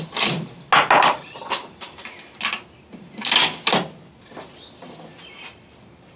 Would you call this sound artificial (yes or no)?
no